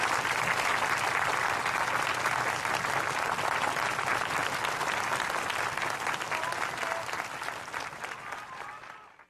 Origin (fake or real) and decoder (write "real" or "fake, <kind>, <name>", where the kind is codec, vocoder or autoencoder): real